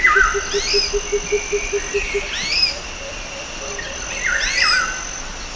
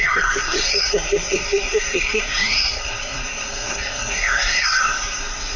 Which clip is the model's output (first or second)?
second